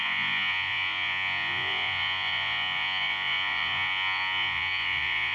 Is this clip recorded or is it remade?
remade